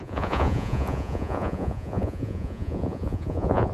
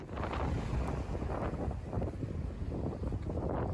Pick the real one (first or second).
second